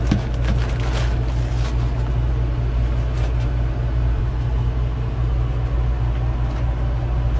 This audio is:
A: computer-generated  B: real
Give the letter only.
B